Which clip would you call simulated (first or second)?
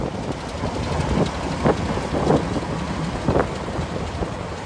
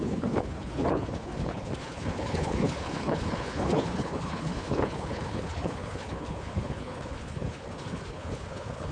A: second